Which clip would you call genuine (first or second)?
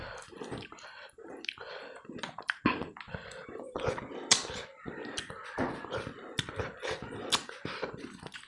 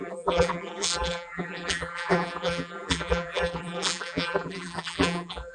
first